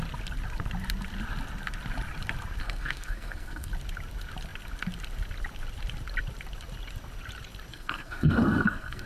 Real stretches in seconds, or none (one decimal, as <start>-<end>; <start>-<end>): 0.0-2.6; 3.7-7.7